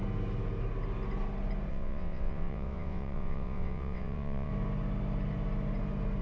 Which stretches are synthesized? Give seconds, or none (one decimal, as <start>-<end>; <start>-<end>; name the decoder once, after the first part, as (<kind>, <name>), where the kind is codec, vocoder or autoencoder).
1.7-4.5 (vocoder, WaveNeXt)